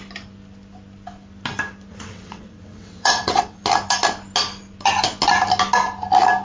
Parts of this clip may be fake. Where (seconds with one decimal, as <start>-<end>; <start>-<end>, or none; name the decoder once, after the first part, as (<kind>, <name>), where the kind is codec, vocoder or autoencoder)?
1.9-3.6 (vocoder, WaveNeXt)